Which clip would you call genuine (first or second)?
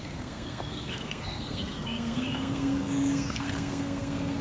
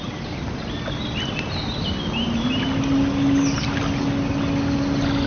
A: second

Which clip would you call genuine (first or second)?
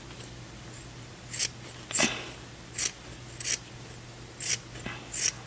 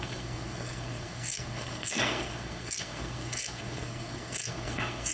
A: first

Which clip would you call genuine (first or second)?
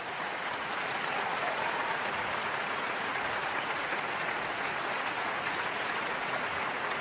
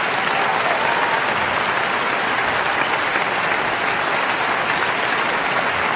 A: second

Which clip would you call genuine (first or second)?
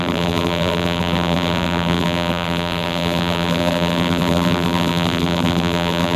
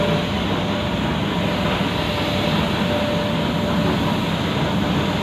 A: second